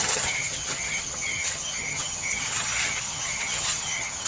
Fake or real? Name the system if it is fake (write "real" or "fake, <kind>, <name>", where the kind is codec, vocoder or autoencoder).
fake, vocoder, HiFi-GAN